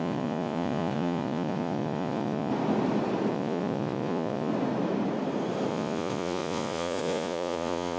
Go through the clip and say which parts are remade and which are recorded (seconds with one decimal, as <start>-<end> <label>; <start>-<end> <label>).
0.0-2.5 remade; 2.5-3.3 recorded; 3.3-4.5 remade; 4.5-5.7 recorded; 5.7-8.0 remade